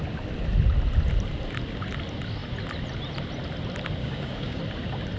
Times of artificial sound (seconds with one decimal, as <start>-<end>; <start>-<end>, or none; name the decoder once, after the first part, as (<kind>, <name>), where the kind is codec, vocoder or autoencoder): 4.0-4.6 (codec, DAC)